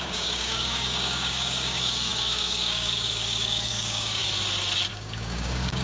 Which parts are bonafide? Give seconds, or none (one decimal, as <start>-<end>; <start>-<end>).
4.2-4.9